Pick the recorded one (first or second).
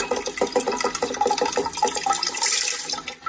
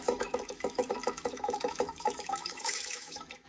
first